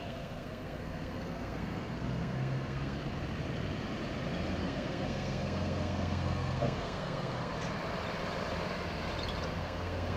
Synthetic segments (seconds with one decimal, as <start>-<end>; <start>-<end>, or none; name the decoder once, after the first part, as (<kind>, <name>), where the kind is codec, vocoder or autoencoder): 0.0-3.0 (codec, SNAC); 4.6-7.5; 9.6-10.2